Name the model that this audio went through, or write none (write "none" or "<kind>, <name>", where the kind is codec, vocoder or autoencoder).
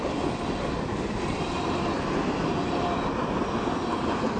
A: none